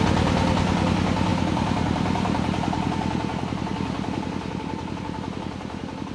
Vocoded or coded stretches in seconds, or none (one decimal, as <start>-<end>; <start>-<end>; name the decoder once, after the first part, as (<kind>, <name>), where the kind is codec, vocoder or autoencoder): 1.3-5.0 (vocoder, BigVGAN v2)